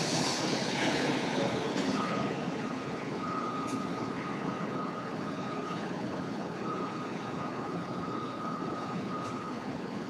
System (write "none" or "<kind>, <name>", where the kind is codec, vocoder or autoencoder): codec, HILCodec